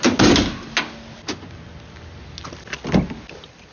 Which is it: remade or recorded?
recorded